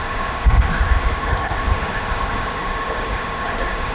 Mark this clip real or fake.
fake